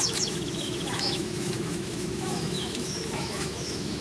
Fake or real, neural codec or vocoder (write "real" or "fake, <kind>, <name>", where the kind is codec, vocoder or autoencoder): fake, autoencoder, DAC-VAE